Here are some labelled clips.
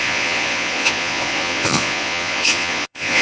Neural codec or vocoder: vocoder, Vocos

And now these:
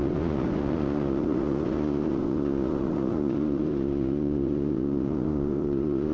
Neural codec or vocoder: vocoder, Vocos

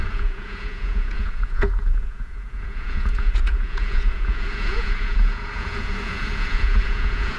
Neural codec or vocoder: vocoder, Vocos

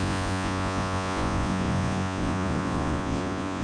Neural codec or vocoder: vocoder, Vocos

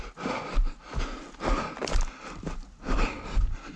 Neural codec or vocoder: none